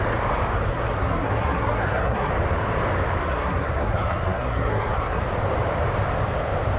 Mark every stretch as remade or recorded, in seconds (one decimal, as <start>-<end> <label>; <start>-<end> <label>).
0.0-0.7 recorded; 0.7-2.3 remade; 2.3-3.2 recorded; 3.2-5.2 remade; 5.2-6.8 recorded